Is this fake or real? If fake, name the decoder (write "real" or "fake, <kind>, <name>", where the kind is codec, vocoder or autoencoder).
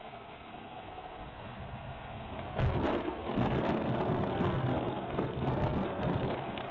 fake, codec, SNAC